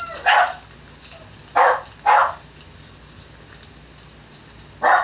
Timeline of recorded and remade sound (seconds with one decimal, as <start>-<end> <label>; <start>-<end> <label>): 0.0-5.0 recorded